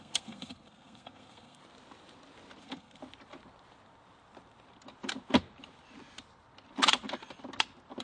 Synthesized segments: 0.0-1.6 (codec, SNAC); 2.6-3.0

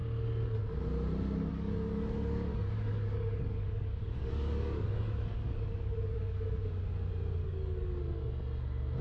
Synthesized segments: 1.5-6.7 (codec, DAC); 7.4-8.0

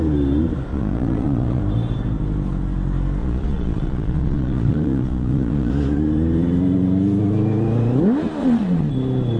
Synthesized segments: 0.7-1.6 (vocoder, Vocos); 3.2-5.7; 8.4-8.9

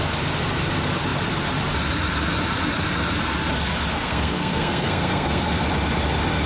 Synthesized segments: 3.9-5.7 (codec, SNAC)

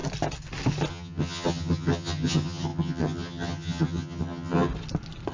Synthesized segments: 0.9-4.7 (vocoder, HiFi-GAN)

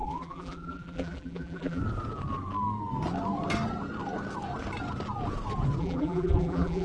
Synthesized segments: 0.0-1.8 (vocoder, BigVGAN v2); 5.8-6.8